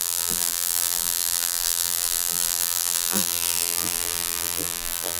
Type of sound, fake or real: fake